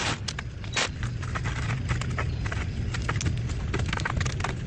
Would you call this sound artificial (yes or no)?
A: no